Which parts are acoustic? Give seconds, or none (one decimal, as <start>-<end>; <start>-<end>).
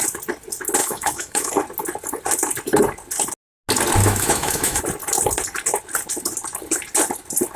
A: 0.0-0.8; 1.5-4.0; 4.8-7.6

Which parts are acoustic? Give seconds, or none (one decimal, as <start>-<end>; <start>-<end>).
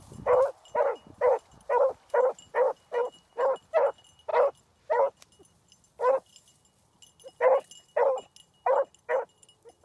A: 0.0-9.8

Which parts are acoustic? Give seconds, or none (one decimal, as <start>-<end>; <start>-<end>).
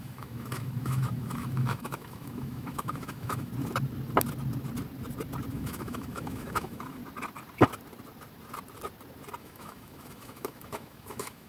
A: 3.5-5.5; 7.0-9.4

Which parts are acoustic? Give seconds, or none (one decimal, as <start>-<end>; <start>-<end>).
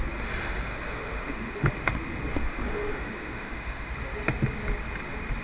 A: 0.0-0.7; 1.7-2.4; 3.9-5.4